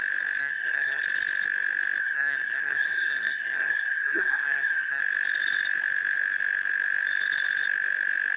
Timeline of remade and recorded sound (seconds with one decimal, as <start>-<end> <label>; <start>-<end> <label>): 0.0-0.4 recorded; 0.4-1.0 remade; 1.0-2.0 recorded; 2.0-5.0 remade; 5.0-8.4 recorded